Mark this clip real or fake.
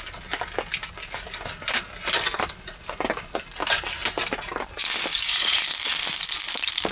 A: real